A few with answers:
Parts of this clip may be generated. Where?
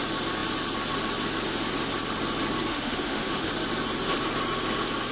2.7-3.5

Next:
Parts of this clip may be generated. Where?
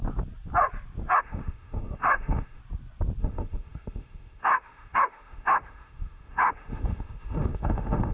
1.2-2.6; 3.2-8.1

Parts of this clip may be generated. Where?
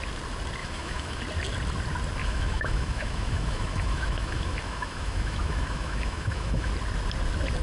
0.6-1.2; 2.2-6.7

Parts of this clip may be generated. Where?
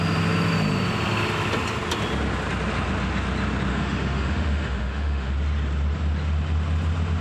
3.7-5.3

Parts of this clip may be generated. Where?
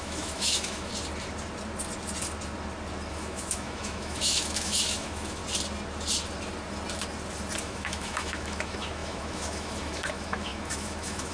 0.0-0.9; 3.1-5.4; 7.6-11.3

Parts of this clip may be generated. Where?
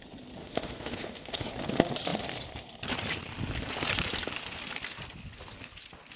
0.4-1.5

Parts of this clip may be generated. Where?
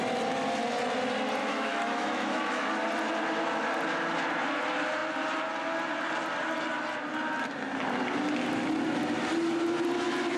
1.4-2.7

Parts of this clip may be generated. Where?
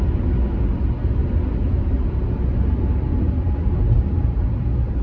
none